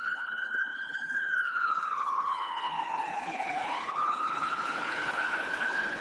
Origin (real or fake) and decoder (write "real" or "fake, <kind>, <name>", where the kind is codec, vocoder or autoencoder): fake, codec, HILCodec